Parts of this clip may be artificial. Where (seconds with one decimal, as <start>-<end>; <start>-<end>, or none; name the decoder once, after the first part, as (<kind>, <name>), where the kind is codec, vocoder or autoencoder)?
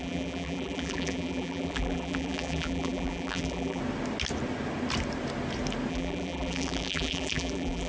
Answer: 0.0-3.8 (vocoder, BigVGAN v2); 5.9-7.9